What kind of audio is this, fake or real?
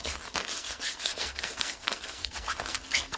fake